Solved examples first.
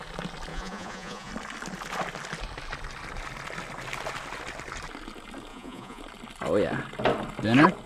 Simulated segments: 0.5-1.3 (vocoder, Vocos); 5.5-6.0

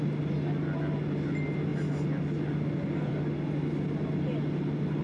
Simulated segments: none

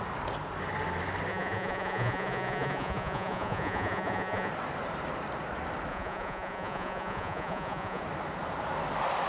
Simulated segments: 1.3-4.5 (vocoder, Vocos); 5.9-8.0

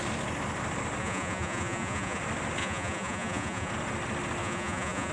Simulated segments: 1.0-2.2 (vocoder, Vocos); 2.6-3.7; 4.4-5.1

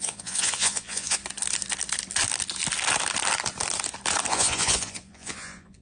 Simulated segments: 0.0-1.2 (vocoder, Vocos); 4.3-5.8

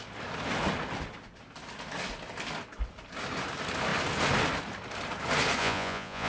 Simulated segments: 5.6-6.3 (vocoder, Vocos)